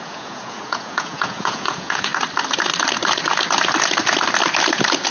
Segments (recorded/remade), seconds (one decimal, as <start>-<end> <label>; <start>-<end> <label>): 0.0-2.1 remade; 2.1-5.1 recorded